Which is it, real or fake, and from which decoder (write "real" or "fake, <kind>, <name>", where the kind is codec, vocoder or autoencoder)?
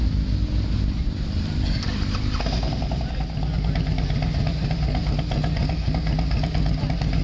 real